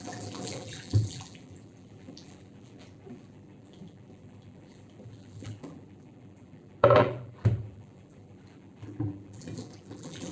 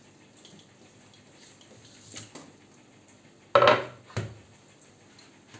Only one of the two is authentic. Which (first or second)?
second